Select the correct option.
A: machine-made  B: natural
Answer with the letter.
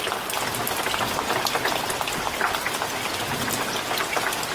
B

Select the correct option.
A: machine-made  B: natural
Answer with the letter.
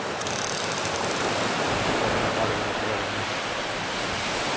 B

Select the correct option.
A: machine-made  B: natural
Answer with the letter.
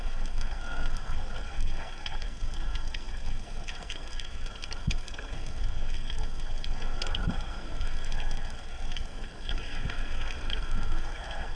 A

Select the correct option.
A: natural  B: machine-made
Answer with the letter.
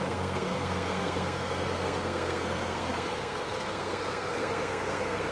B